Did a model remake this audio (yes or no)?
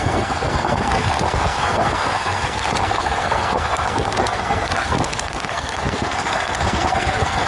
yes